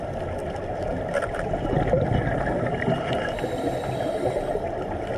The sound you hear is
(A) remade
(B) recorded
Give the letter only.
B